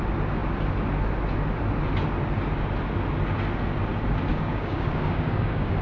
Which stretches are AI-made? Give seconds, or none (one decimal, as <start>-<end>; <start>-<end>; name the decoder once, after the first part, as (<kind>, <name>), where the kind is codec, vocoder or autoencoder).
4.3-5.8 (codec, DAC)